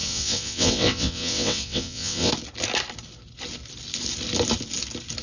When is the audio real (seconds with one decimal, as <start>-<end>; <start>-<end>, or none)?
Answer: 2.3-5.2